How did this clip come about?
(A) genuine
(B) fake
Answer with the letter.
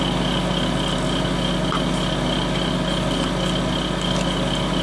A